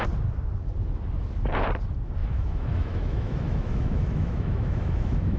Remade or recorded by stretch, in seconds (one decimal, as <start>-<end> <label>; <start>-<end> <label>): 0.0-2.2 recorded; 2.2-5.4 remade